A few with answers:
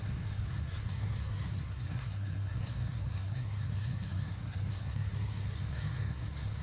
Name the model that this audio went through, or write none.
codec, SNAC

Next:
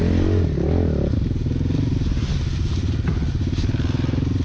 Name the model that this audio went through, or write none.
none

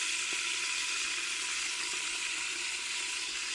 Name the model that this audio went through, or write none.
none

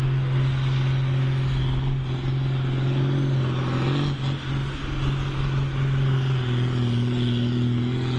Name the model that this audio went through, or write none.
none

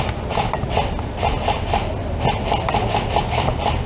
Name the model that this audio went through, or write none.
none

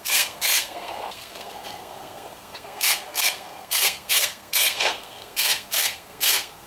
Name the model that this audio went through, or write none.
codec, SNAC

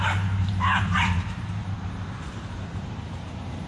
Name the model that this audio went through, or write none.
vocoder, BigVGAN v2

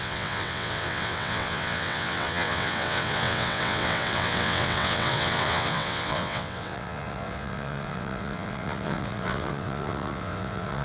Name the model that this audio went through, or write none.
vocoder, WaveNeXt